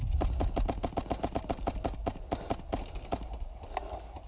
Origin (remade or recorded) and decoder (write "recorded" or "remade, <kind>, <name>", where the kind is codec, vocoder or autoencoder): recorded